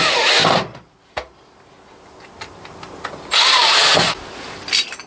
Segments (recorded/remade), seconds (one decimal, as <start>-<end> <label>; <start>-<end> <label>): 0.0-5.1 recorded